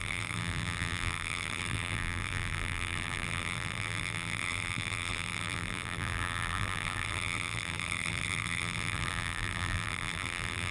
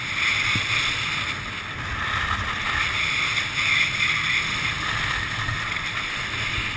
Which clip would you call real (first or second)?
second